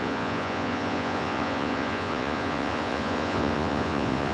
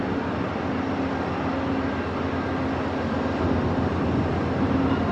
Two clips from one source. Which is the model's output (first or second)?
first